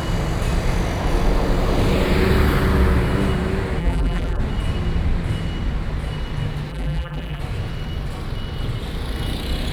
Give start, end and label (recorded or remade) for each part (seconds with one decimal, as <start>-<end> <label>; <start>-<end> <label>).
0.0-3.8 recorded; 3.8-4.4 remade; 4.4-6.7 recorded; 6.7-7.4 remade; 7.4-9.7 recorded